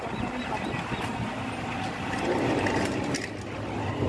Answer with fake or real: real